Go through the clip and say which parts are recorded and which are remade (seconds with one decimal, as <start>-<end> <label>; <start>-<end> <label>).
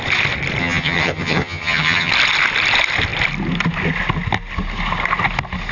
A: 0.0-0.6 recorded; 0.6-2.1 remade; 2.1-5.7 recorded